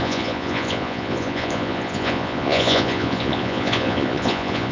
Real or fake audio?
fake